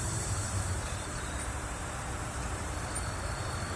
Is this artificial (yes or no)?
yes